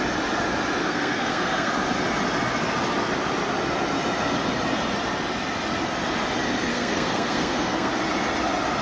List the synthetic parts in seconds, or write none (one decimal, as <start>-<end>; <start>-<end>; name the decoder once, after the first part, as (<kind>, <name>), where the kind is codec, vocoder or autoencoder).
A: 0.8-1.7 (codec, SNAC); 6.7-7.9